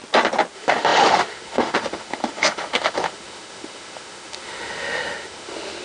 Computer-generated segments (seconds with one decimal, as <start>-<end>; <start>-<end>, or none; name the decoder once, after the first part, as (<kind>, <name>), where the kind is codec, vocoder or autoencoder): 0.5-5.8 (autoencoder, DAC-VAE)